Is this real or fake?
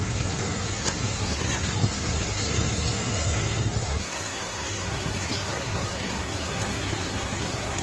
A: fake